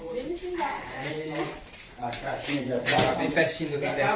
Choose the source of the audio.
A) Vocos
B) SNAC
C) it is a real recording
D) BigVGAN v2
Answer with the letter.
D